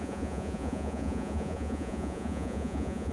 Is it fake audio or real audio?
fake